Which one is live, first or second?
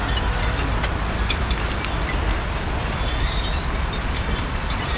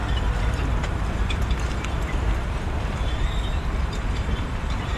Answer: first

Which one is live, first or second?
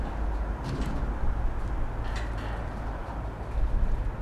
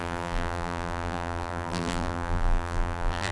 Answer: first